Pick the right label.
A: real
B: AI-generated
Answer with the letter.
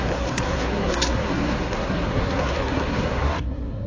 B